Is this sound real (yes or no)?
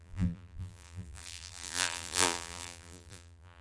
no